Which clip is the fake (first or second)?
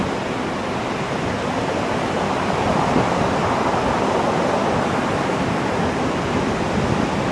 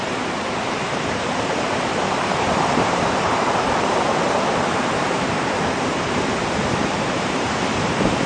second